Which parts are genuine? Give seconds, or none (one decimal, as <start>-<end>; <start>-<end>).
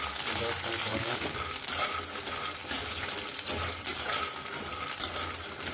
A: 0.0-0.9; 1.7-5.7